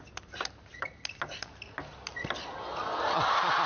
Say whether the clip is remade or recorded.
recorded